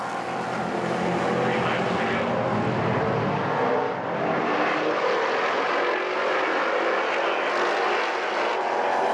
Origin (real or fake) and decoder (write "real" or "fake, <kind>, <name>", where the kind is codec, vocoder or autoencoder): real